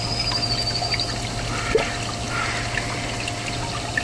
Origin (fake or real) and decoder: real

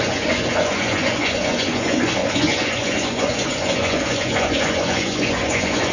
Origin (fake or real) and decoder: fake, vocoder, Vocos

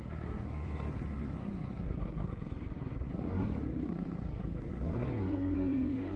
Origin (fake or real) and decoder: fake, codec, SNAC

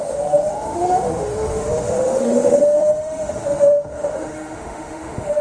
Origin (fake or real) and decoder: fake, autoencoder, DAC-VAE